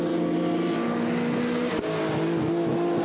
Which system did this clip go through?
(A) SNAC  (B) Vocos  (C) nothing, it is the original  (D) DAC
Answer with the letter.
C